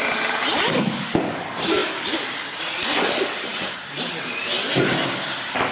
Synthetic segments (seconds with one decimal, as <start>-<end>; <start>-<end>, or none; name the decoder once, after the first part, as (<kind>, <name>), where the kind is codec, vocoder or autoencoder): none